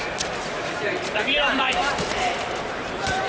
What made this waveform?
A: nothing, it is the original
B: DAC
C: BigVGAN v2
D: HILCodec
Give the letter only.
A